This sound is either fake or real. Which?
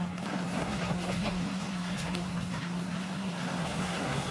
fake